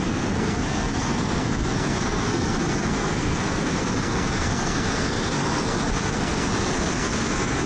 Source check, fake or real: fake